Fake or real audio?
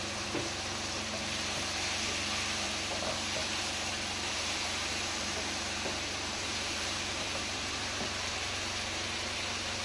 fake